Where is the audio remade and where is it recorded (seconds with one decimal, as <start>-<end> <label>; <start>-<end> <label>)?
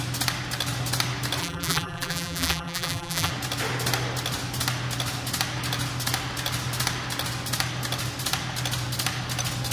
0.0-1.4 recorded; 1.4-3.3 remade; 3.3-9.7 recorded